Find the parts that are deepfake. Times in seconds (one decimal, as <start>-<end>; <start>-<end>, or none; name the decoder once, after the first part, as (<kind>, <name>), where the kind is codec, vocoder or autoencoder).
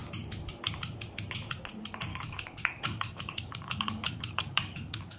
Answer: 2.1-5.2 (codec, DAC)